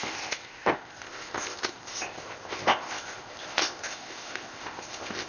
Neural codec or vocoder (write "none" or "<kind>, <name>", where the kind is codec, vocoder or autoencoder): codec, ZipCodec